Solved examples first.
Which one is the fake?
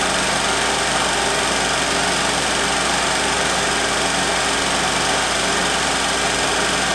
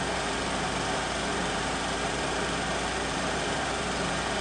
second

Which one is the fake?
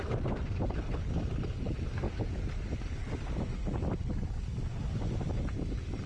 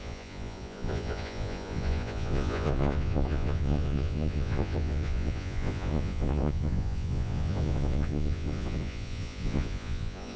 second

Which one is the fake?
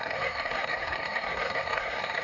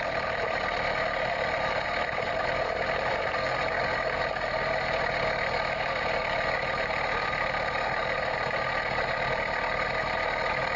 first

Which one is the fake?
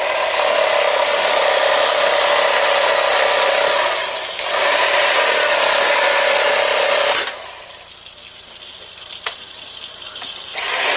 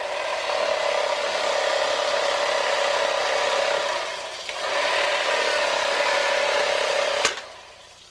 first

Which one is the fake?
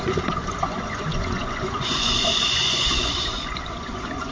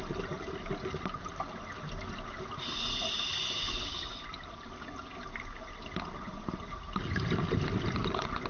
first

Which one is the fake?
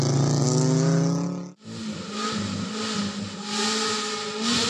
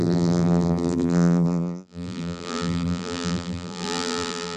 second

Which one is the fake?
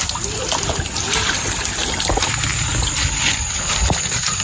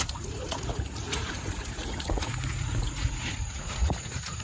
second